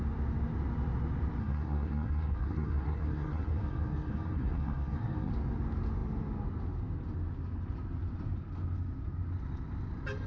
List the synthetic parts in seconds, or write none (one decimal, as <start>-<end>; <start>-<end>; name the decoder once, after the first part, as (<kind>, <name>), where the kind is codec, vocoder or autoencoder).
1.4-5.3 (codec, SNAC)